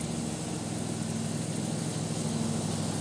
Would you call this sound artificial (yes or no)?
no